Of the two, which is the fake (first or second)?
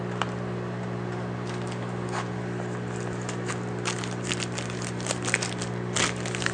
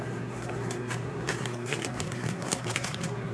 second